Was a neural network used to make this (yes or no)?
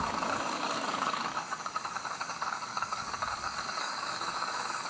yes